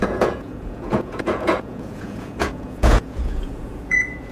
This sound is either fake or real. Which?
fake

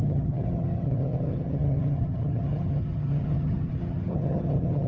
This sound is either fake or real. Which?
fake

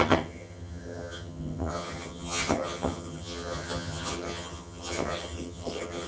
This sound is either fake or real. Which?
fake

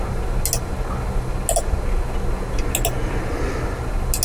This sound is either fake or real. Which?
real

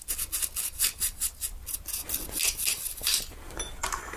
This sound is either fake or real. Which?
real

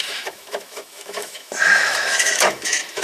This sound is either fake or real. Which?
fake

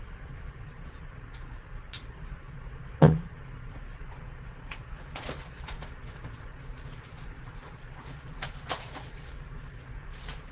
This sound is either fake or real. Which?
fake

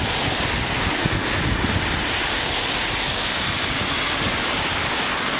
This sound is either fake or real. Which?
real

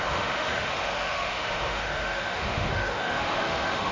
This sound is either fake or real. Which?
fake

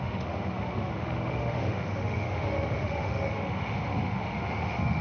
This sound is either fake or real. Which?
fake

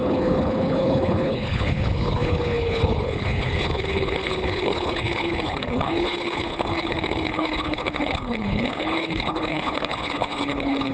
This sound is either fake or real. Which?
fake